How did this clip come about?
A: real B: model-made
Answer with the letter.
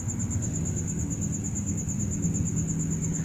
A